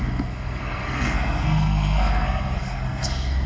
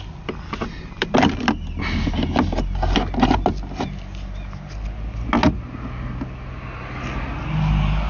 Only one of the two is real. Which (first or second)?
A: second